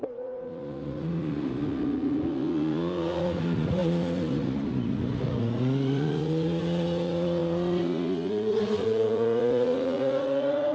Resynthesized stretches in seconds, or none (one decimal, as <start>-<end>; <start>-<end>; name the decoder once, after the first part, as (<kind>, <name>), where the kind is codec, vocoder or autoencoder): 0.0-10.7 (vocoder, Vocos)